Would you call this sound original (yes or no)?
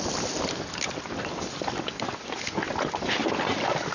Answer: yes